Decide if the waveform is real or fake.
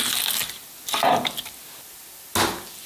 real